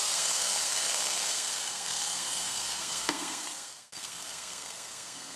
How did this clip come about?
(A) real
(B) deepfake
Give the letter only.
B